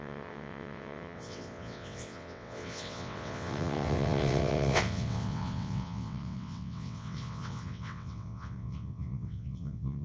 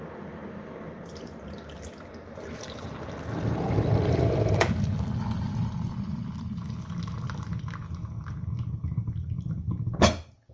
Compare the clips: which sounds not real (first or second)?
first